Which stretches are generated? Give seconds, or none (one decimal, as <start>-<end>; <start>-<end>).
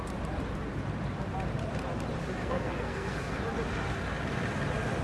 2.4-3.4